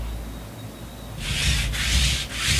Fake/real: real